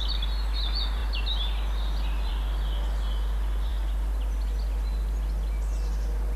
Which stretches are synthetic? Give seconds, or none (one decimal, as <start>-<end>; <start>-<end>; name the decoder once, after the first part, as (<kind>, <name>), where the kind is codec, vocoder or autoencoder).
none